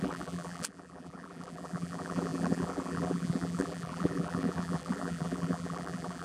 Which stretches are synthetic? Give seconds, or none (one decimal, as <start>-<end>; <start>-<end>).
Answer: 0.0-6.2